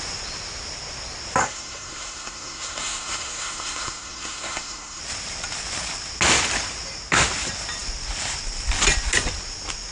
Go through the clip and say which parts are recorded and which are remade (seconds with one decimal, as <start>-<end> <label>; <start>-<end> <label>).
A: 0.0-1.4 recorded; 1.4-5.0 remade; 5.0-9.9 recorded